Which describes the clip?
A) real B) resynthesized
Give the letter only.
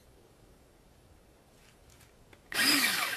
B